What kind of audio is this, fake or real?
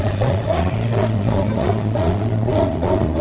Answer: fake